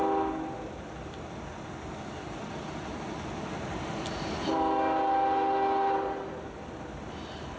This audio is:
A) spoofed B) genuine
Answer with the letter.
B